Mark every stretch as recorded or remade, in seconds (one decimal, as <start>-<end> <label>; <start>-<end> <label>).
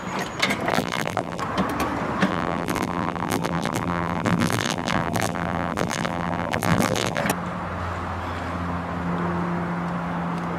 0.0-0.7 recorded; 0.7-1.4 remade; 1.4-2.3 recorded; 2.3-7.2 remade; 7.2-10.6 recorded